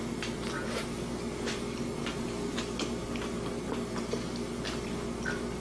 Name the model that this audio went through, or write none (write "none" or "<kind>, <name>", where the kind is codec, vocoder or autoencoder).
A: none